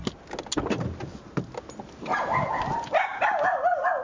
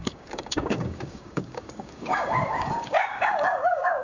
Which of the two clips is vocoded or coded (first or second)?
second